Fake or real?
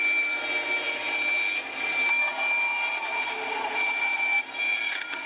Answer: real